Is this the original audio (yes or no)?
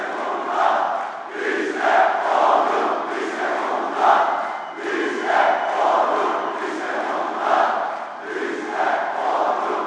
yes